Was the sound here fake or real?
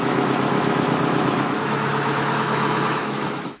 fake